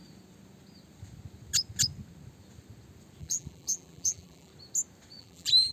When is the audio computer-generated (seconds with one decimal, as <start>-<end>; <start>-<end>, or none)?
3.2-4.5; 5.2-5.7